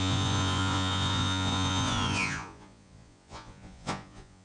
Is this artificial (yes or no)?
yes